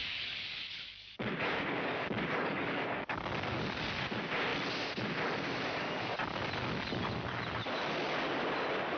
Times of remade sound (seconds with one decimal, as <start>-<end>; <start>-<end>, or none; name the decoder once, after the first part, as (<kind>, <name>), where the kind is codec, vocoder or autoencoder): 0.0-3.9 (codec, DAC)